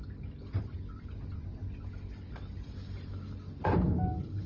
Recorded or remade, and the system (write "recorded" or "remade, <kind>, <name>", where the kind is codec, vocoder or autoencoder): recorded